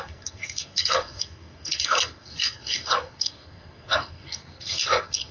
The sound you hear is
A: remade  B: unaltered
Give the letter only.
A